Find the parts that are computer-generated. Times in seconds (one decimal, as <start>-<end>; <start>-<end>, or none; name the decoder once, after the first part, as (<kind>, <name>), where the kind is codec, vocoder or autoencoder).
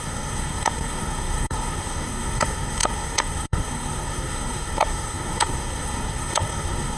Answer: 0.0-7.0 (codec, SNAC)